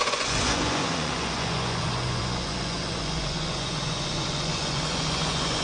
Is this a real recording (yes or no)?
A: no